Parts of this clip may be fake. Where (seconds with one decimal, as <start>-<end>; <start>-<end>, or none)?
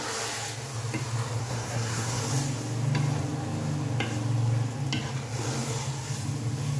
1.4-2.2